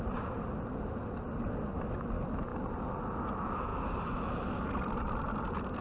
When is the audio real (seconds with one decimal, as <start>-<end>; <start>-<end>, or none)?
0.0-5.8